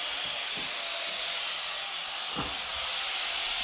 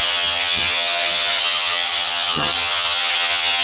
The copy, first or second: second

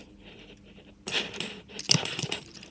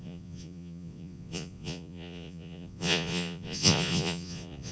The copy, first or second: second